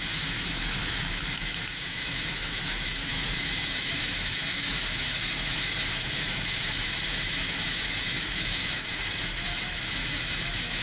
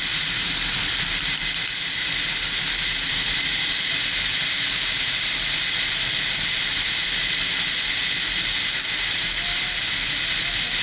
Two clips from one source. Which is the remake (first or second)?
first